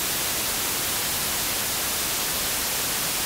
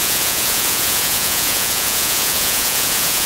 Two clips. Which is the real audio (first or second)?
first